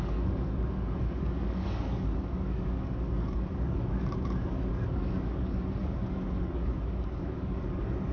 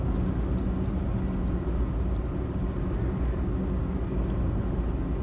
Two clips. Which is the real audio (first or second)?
second